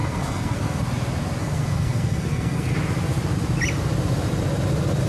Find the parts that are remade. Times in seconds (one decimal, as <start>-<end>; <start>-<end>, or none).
0.0-0.8; 1.4-2.7